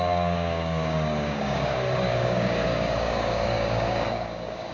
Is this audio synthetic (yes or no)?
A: yes